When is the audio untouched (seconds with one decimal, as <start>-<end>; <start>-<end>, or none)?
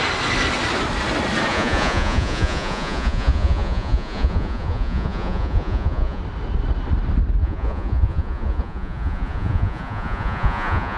0.0-1.5; 6.2-7.4